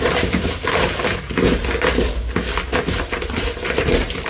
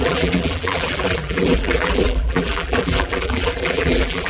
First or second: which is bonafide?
first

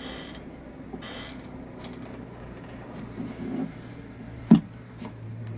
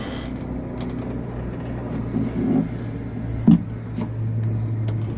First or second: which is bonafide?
second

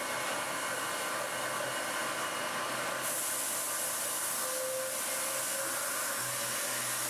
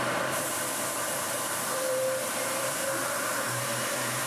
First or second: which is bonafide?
first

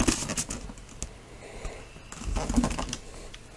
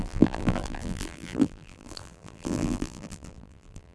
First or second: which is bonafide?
first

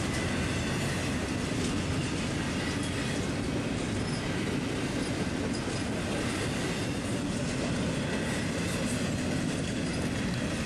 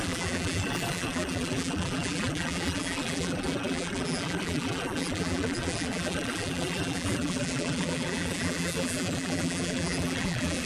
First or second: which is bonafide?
first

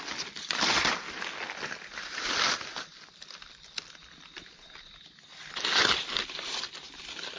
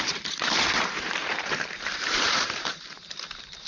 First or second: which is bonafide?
first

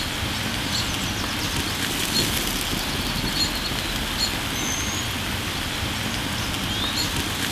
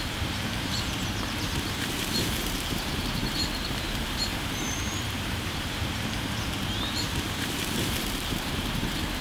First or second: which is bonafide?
first